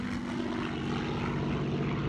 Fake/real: real